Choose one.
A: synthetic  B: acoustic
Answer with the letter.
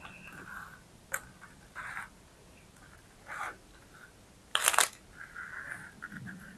B